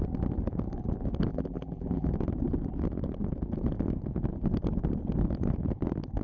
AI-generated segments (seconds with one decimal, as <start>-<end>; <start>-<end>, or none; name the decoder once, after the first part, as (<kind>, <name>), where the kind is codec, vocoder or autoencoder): 1.3-2.1 (vocoder, BigVGAN v2)